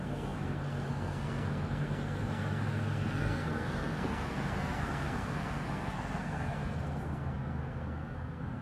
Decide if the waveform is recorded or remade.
remade